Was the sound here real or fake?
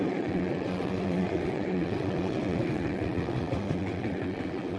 fake